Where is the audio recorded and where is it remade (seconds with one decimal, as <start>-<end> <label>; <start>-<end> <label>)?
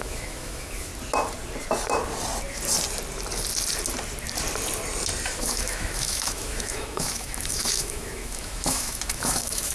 0.0-0.9 remade; 0.9-5.3 recorded; 5.3-9.7 remade